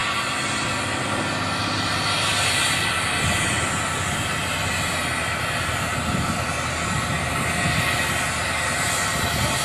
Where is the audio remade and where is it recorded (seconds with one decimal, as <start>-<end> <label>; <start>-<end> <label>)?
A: 0.0-9.6 recorded